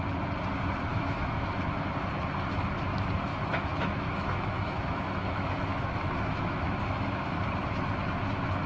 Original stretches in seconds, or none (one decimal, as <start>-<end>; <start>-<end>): 0.0-0.9; 1.5-3.3; 7.4-8.7